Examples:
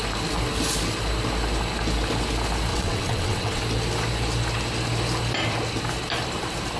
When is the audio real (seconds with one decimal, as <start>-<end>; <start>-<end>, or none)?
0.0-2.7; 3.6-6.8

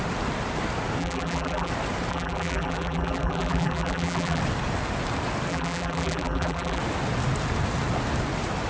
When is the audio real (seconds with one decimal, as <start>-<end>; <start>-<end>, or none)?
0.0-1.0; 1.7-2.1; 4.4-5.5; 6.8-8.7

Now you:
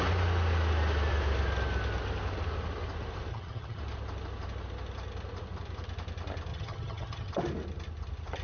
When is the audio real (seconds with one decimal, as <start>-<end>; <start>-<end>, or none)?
0.0-3.3; 3.8-6.5; 7.3-8.4